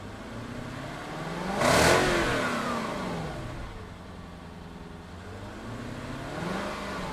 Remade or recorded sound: recorded